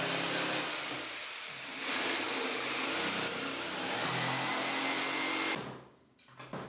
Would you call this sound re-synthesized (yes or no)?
no